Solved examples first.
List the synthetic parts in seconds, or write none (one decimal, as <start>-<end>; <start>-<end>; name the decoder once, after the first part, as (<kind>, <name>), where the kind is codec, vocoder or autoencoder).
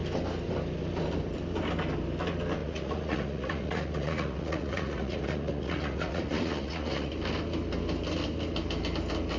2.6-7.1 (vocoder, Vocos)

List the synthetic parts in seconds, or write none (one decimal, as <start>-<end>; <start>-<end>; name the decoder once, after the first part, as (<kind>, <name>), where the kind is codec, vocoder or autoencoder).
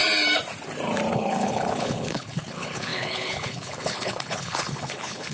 1.1-5.3 (codec, HILCodec)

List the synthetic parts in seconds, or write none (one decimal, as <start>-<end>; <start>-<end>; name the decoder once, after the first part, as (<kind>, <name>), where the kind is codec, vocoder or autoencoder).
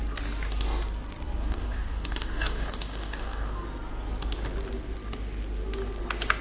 1.4-3.6 (codec, DAC)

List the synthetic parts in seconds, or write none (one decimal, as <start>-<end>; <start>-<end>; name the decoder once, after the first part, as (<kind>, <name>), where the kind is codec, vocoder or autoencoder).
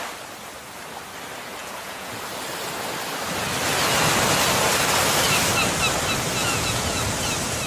1.6-2.1 (vocoder, Vocos); 6.4-7.0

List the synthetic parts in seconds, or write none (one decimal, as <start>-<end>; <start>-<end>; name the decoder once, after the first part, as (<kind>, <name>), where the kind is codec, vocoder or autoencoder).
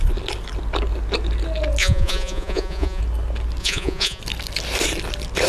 1.8-3.0 (vocoder, Vocos); 3.6-4.2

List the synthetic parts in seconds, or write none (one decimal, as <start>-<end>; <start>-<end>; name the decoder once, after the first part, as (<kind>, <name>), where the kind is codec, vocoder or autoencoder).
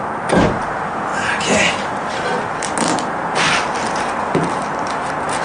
none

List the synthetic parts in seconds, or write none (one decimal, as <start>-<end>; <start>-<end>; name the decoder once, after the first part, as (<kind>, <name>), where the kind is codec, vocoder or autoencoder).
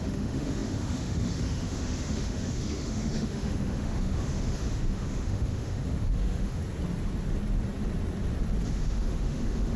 0.0-6.6 (autoencoder, DAC-VAE); 8.7-9.8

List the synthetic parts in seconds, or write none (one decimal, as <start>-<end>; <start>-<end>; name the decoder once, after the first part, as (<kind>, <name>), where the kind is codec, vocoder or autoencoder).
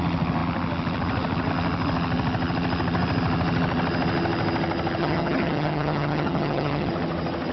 5.0-6.9 (vocoder, HiFi-GAN)